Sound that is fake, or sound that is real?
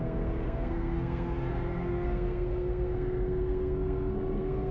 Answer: fake